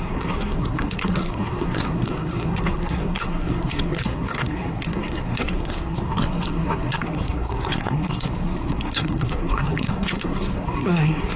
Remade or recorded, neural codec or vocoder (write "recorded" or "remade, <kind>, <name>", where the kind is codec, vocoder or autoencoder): remade, codec, SNAC